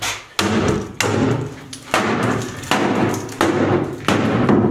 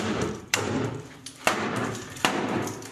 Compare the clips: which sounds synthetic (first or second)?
second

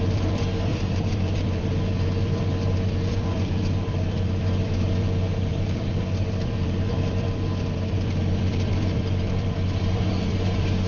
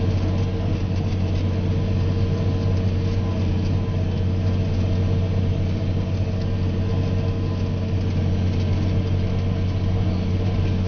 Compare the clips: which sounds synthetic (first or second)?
first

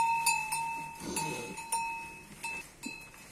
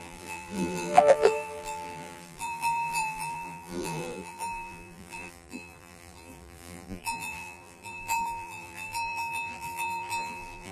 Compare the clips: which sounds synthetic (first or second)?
second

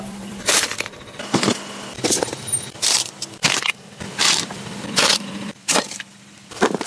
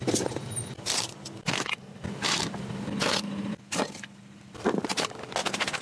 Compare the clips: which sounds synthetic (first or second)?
first